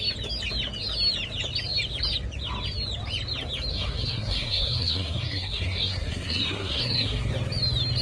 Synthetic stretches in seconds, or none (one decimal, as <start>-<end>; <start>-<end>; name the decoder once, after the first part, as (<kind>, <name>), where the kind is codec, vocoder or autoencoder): 3.7-7.3 (codec, SNAC)

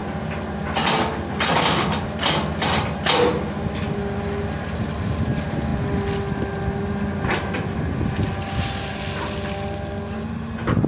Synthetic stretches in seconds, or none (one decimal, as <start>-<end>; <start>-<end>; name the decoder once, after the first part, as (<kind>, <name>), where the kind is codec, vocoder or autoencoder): none